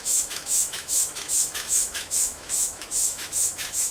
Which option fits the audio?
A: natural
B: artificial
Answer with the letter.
B